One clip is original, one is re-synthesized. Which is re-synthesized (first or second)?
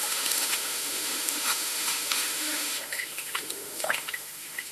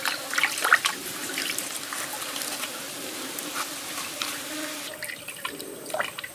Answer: first